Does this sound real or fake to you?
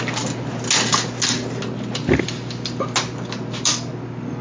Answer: real